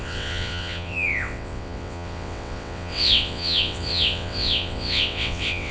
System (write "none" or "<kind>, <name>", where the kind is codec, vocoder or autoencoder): vocoder, WaveNeXt